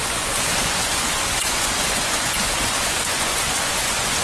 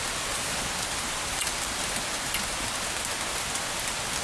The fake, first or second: first